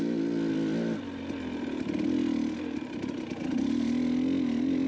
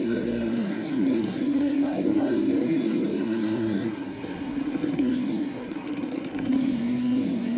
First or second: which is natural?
first